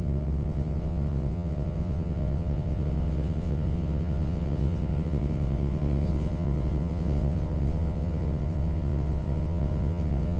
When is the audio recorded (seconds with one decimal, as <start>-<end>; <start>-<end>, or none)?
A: none